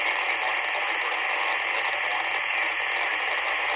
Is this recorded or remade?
recorded